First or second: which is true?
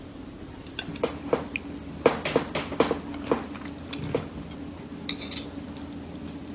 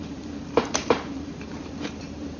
first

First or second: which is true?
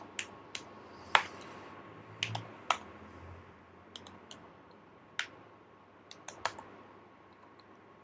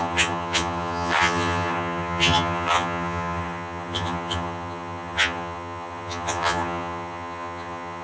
first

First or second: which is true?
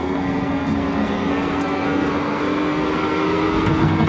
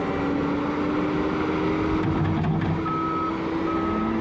second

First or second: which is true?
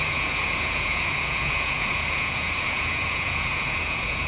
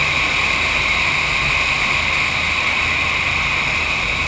second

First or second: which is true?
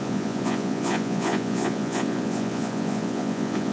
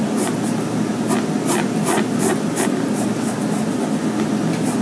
second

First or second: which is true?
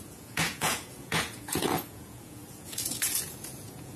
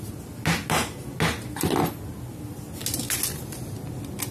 second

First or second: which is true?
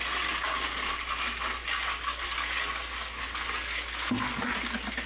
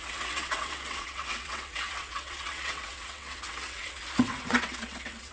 first